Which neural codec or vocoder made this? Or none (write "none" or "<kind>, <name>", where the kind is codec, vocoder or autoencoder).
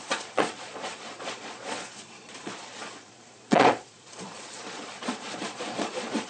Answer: vocoder, Vocos